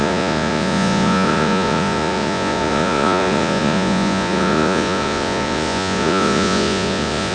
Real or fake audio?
fake